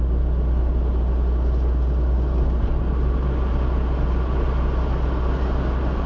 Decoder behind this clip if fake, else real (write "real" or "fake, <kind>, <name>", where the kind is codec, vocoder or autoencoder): real